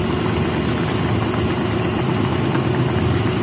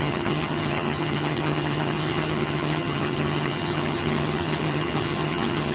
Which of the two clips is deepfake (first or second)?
second